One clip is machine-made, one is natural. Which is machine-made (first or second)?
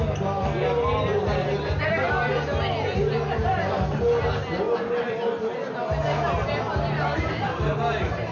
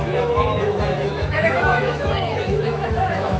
second